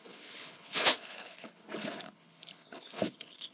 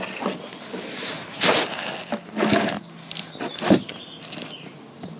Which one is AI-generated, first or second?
first